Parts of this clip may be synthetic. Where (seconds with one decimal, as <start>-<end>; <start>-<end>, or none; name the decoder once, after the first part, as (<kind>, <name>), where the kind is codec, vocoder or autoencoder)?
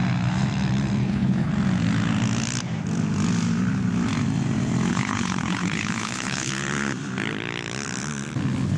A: 1.0-1.5 (codec, HILCodec); 4.9-6.5